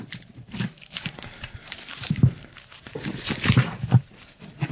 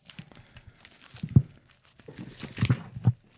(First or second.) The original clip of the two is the second